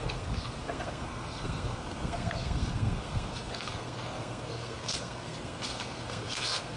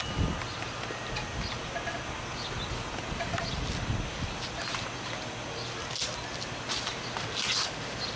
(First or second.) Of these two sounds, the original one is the second